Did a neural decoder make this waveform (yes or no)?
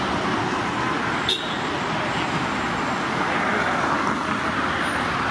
no